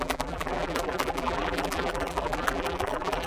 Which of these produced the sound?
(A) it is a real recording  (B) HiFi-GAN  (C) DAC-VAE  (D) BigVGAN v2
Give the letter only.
D